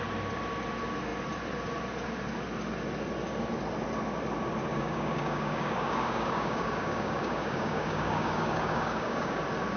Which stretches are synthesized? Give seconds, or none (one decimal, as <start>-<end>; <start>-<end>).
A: 4.7-9.4